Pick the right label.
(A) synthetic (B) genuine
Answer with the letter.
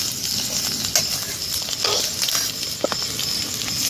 B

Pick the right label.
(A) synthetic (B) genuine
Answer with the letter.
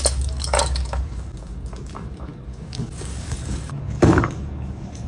A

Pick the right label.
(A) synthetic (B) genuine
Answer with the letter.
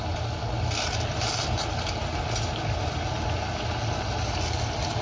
B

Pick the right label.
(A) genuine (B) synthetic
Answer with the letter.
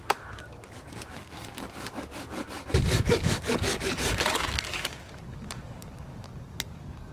B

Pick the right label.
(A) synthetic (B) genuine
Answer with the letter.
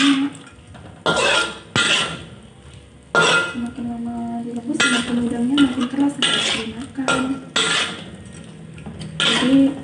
B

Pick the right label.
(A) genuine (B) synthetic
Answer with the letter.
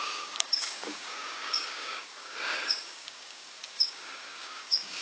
B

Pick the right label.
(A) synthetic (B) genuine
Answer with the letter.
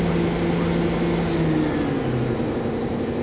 B